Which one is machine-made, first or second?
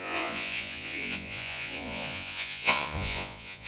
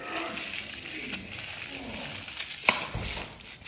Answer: first